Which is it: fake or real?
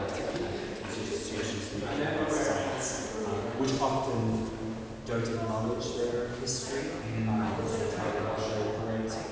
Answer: real